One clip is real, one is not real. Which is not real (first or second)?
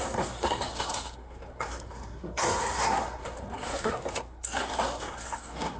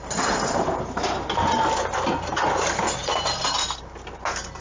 first